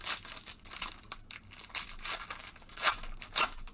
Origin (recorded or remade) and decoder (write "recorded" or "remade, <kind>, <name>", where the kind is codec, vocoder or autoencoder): recorded